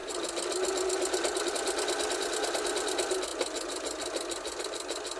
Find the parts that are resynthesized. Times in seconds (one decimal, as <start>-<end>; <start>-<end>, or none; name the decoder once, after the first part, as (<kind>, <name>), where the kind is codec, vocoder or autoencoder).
none